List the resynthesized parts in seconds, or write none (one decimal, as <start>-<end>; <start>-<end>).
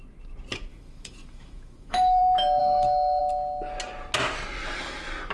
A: 0.7-2.2; 2.6-3.2